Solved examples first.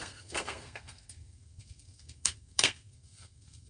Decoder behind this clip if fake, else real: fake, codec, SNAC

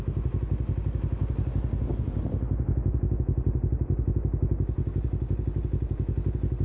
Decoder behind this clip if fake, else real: real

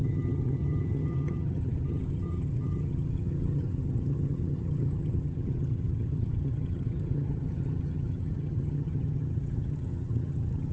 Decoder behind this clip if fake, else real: fake, vocoder, HiFi-GAN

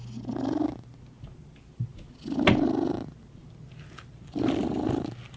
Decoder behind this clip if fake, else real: real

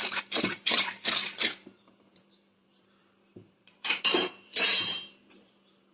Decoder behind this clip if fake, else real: fake, vocoder, BigVGAN v2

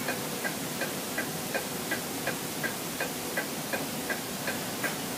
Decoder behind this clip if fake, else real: real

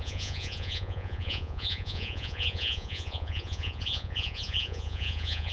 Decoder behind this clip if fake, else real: fake, vocoder, Vocos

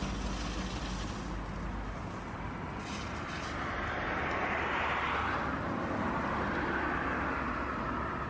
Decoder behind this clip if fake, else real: real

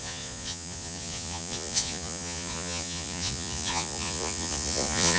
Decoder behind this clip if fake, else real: fake, vocoder, Vocos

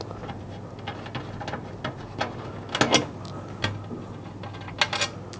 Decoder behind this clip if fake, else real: real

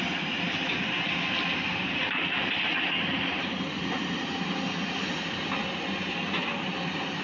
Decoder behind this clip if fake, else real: real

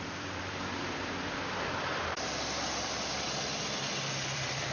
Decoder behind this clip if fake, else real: fake, vocoder, BigVGAN v2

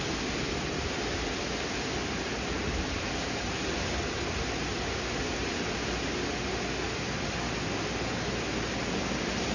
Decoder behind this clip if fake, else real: real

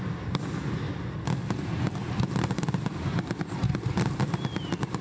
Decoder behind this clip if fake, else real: real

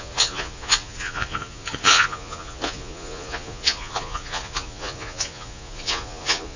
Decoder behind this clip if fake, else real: fake, vocoder, Vocos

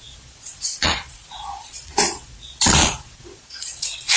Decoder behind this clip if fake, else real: fake, vocoder, Vocos